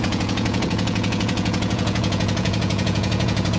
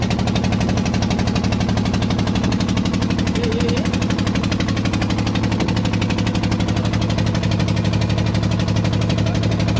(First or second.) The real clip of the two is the second